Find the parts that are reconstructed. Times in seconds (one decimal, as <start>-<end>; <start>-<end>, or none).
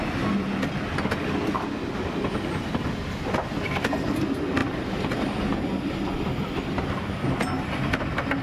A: none